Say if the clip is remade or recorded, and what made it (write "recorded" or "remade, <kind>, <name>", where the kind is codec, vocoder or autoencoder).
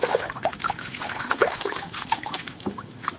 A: remade, autoencoder, DAC-VAE